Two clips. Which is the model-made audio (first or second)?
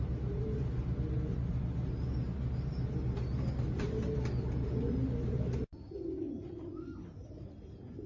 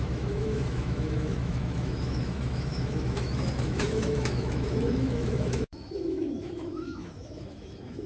second